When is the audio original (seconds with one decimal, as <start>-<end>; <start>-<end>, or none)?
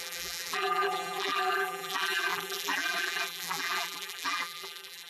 none